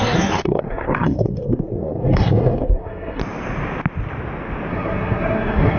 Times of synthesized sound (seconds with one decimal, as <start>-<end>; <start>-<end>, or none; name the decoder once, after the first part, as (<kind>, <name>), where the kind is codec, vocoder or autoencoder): 0.0-3.2 (codec, SNAC); 4.7-5.8